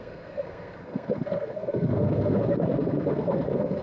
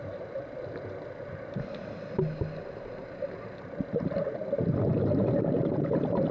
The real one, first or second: second